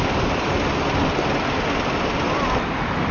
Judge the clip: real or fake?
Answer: real